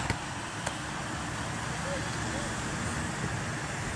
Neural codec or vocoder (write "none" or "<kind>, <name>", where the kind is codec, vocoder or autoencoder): none